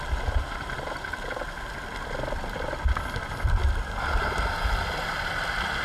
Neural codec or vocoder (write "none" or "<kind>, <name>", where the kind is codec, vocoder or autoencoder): none